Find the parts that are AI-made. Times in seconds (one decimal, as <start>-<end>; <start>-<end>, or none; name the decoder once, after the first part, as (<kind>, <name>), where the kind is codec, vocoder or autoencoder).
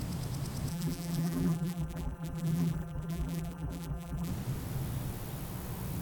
0.7-4.3 (vocoder, BigVGAN v2)